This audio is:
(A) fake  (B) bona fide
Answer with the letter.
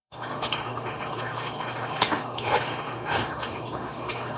A